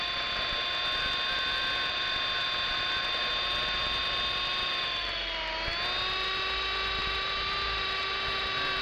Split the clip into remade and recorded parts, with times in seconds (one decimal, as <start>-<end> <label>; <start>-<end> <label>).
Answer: 0.0-8.8 recorded